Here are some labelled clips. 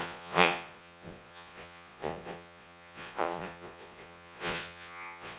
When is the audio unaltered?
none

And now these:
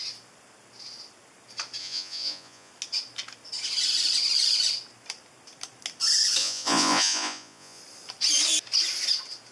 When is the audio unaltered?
0.0-1.8; 2.7-6.4; 7.8-9.5